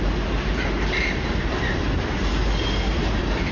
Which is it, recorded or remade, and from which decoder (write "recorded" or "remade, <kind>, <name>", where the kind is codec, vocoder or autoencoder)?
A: recorded